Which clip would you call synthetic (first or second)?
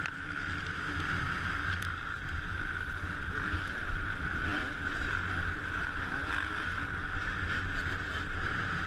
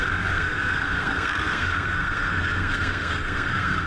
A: second